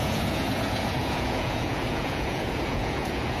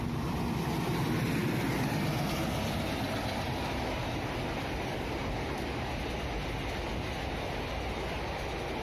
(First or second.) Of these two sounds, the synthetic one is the first